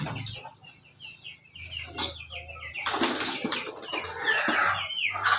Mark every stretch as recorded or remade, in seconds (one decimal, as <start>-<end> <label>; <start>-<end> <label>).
0.0-5.4 recorded

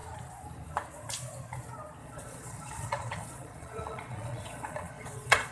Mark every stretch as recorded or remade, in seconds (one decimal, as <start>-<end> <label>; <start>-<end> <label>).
0.0-2.0 recorded; 2.0-5.5 remade

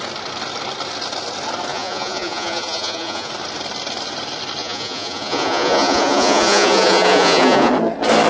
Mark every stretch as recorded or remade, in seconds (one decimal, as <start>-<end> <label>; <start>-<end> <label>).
0.0-1.7 recorded; 1.7-3.3 remade; 3.3-4.6 recorded; 4.6-7.7 remade; 7.7-8.3 recorded

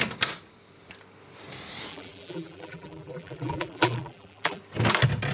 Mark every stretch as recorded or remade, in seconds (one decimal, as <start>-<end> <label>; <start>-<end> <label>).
0.0-1.9 recorded; 1.9-4.6 remade; 4.6-5.3 recorded

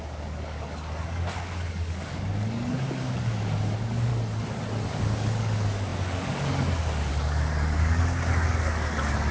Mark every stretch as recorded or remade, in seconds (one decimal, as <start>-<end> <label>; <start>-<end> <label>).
0.0-4.1 remade; 4.1-5.0 recorded; 5.0-9.3 remade

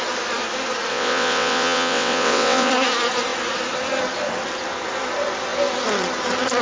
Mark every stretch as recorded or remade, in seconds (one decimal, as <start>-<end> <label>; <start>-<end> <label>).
0.0-0.9 recorded; 0.9-2.7 remade; 2.7-6.6 recorded

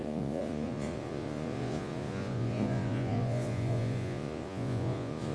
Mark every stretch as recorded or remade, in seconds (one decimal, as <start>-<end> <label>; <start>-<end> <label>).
0.0-5.3 remade

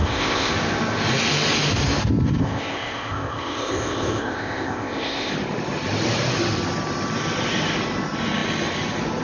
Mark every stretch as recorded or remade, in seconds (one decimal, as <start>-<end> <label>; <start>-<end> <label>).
0.0-0.5 remade; 0.5-2.4 recorded; 2.4-5.3 remade; 5.3-9.2 recorded